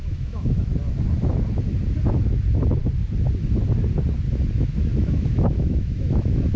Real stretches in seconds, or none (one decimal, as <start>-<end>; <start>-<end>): 0.7-4.5

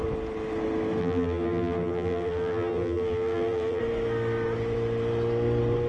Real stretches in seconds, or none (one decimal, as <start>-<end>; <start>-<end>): 0.0-1.0; 3.8-5.9

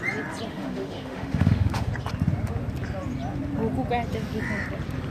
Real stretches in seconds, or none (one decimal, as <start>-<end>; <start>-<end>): 0.0-0.5; 1.9-5.1

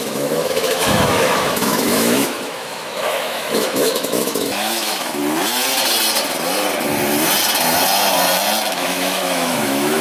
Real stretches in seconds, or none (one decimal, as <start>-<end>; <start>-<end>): 5.2-8.7

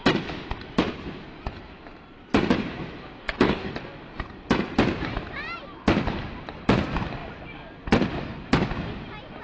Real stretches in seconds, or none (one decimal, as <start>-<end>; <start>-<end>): 0.0-3.2; 3.7-9.4

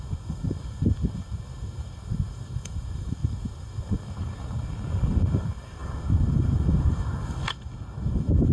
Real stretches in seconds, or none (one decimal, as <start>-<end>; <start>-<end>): none

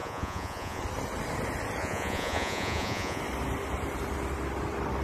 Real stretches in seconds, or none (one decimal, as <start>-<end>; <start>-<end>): 0.8-1.8; 3.2-5.0

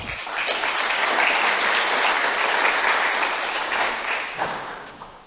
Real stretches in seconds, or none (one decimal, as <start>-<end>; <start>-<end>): 0.0-3.6